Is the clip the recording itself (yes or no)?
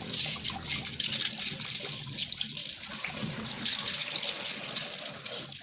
yes